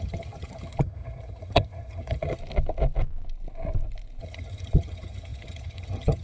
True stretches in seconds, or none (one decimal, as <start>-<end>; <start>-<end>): 2.4-4.2